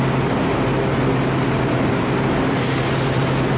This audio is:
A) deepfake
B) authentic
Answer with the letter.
B